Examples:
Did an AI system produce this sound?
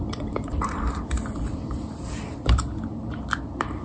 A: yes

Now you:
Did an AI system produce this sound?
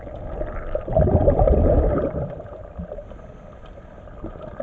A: yes